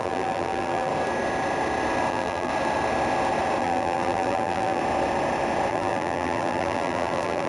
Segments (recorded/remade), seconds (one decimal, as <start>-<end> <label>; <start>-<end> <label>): 0.0-0.9 remade; 0.9-2.1 recorded; 2.1-2.5 remade; 2.5-3.6 recorded; 3.6-4.8 remade; 4.8-5.7 recorded; 5.7-7.5 remade